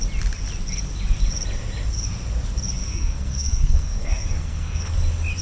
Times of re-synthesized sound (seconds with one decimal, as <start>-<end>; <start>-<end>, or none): 2.8-4.9